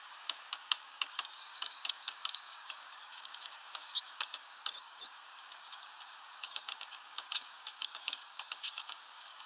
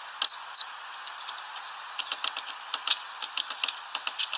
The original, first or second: second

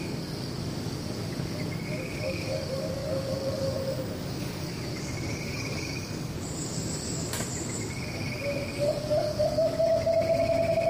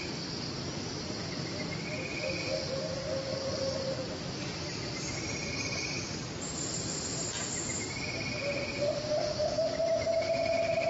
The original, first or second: second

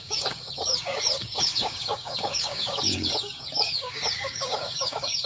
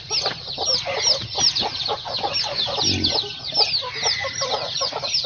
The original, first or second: second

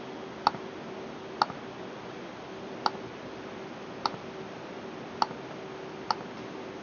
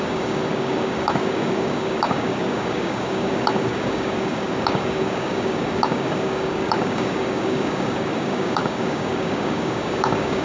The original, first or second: first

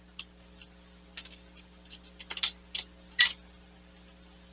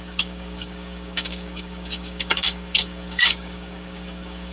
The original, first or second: first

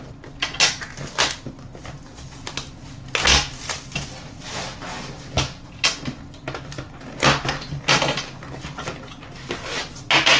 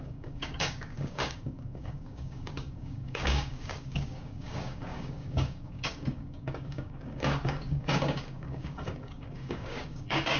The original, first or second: first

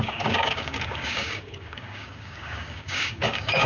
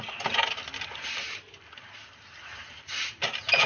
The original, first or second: second